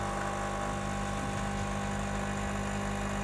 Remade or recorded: recorded